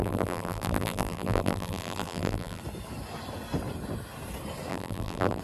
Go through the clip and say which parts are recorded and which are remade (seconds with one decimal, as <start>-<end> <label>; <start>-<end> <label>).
0.0-2.6 remade; 2.6-4.7 recorded; 4.7-5.4 remade